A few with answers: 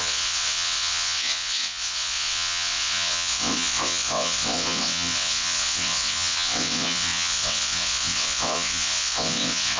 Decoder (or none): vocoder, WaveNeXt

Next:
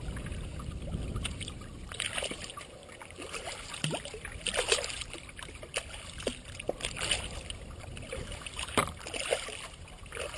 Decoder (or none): vocoder, BigVGAN v2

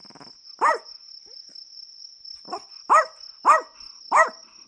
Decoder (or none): none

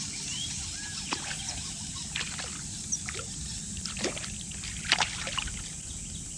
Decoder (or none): none